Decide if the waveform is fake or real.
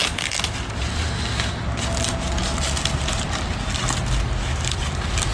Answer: real